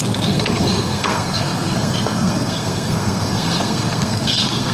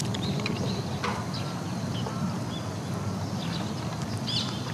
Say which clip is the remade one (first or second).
first